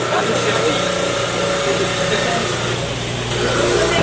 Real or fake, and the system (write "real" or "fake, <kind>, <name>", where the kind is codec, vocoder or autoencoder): real